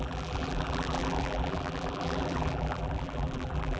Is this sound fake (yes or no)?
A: yes